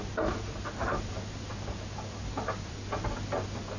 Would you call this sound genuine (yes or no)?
yes